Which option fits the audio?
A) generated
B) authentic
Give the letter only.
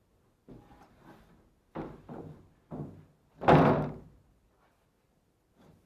B